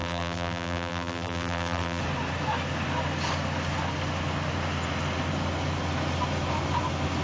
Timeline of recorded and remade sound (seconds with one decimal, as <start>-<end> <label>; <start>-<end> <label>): 0.0-2.0 remade; 2.0-7.2 recorded